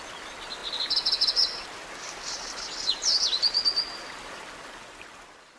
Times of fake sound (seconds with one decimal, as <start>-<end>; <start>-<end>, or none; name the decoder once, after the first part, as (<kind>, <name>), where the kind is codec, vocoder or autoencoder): none

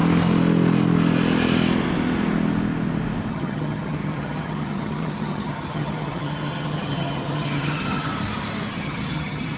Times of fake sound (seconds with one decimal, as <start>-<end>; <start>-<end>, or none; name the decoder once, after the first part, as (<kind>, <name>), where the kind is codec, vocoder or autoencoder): 3.3-8.1 (vocoder, HiFi-GAN); 8.7-9.6

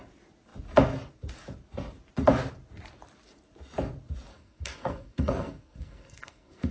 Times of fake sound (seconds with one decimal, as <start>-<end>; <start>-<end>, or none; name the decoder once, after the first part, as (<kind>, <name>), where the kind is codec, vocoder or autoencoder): 4.3-6.7 (codec, SNAC)

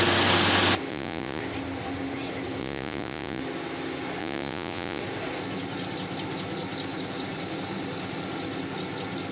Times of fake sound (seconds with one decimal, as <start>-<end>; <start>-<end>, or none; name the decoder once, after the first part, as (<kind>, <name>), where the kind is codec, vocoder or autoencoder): 0.9-1.4 (vocoder, Vocos); 2.6-3.4; 4.2-5.0

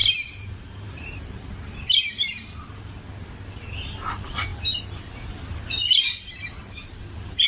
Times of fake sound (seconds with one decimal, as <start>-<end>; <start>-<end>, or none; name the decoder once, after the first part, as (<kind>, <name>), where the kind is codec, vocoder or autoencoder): 0.0-1.8 (vocoder, BigVGAN v2)

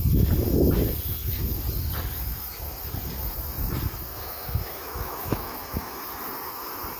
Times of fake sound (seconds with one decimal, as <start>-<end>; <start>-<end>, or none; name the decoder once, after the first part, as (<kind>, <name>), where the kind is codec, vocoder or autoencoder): 4.1-6.0 (autoencoder, DAC-VAE)

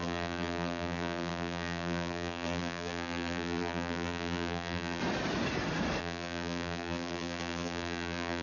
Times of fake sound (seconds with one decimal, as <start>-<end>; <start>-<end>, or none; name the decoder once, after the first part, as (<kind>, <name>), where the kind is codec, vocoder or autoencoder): 0.0-5.0 (vocoder, BigVGAN v2); 6.0-8.4